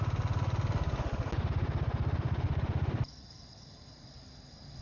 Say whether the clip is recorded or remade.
recorded